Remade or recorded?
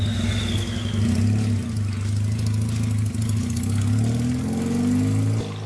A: recorded